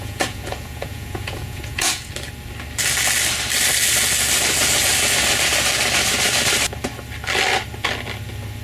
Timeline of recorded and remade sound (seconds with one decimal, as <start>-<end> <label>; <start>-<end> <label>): 0.0-2.1 remade; 2.1-8.6 recorded